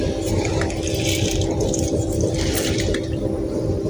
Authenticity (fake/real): real